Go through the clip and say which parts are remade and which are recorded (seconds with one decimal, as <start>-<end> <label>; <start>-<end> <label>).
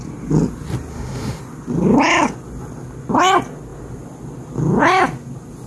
0.0-0.9 recorded; 0.9-1.4 remade; 1.4-5.7 recorded